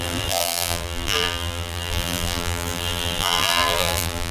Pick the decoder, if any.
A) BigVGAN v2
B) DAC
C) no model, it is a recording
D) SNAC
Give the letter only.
A